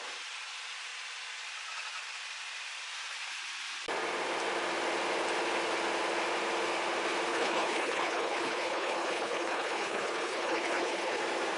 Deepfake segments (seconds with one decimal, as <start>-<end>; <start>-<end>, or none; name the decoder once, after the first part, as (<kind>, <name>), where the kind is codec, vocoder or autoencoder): 7.3-11.2 (codec, HILCodec)